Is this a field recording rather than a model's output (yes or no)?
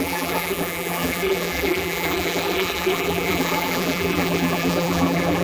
no